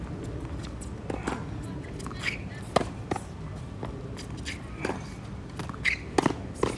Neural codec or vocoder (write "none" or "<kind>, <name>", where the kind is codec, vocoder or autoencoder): none